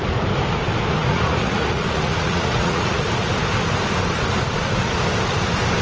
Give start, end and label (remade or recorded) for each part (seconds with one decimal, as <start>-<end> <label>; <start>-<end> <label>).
0.0-1.0 recorded; 1.0-3.0 remade; 3.0-5.8 recorded